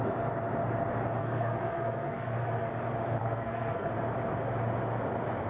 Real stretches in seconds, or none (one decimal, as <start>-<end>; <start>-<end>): 0.0-1.2; 2.7-3.2; 3.9-5.5